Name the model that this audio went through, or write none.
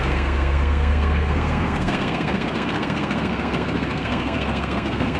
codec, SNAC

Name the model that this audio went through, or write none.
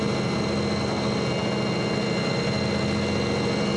none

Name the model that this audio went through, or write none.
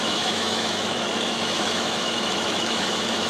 autoencoder, DAC-VAE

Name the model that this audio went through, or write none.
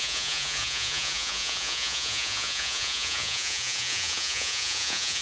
vocoder, Vocos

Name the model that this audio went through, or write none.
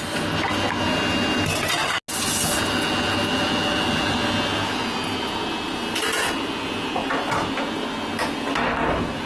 none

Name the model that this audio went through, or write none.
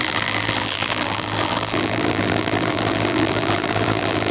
vocoder, BigVGAN v2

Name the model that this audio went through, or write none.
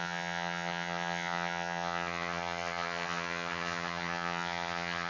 vocoder, HiFi-GAN